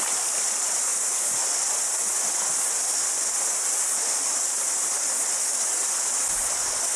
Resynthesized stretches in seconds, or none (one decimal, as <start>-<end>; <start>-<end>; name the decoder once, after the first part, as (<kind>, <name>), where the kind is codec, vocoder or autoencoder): none